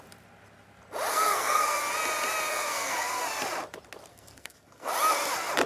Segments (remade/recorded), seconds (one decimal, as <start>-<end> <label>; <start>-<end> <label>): 0.0-1.1 recorded; 1.1-1.8 remade; 1.8-2.5 recorded; 2.5-3.2 remade; 3.2-4.1 recorded; 4.1-4.9 remade; 4.9-5.7 recorded